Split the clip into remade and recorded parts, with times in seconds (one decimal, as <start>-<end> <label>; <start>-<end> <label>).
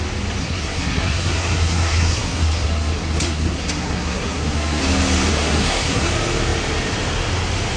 0.0-0.4 recorded; 0.4-4.8 remade; 4.8-5.3 recorded; 5.3-6.1 remade; 6.1-7.8 recorded